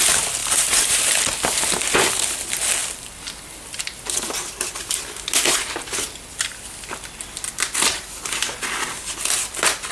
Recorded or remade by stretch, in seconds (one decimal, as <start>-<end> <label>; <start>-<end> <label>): 0.0-0.4 recorded; 0.4-1.2 remade; 1.2-9.9 recorded